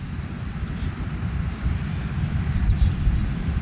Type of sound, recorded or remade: recorded